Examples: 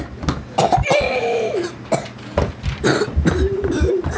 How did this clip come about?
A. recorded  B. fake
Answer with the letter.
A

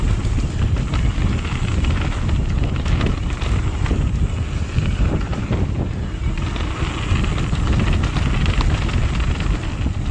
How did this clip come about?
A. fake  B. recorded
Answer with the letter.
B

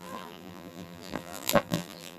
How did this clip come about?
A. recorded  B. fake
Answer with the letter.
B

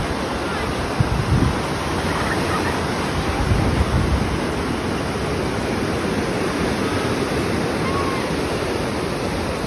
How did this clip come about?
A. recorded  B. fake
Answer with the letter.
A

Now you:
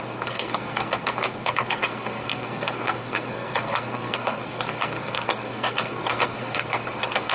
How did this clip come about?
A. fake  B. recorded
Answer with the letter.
A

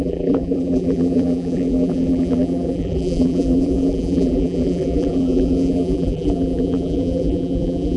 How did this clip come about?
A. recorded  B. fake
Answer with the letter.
B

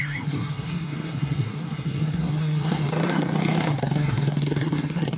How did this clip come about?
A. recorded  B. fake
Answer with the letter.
B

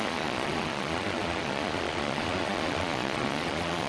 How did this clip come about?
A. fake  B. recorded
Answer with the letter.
A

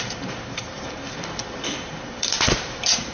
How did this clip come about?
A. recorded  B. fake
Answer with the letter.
B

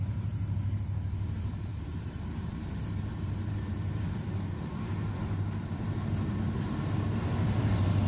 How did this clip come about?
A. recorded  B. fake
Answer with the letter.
B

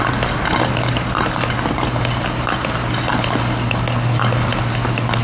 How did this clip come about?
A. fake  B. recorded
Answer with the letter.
B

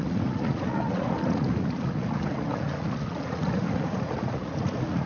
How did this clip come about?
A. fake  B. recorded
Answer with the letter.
A